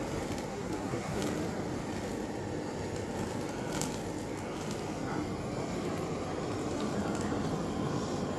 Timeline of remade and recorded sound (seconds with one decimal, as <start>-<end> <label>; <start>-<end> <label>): 0.0-0.5 recorded; 0.5-1.2 remade; 1.2-8.4 recorded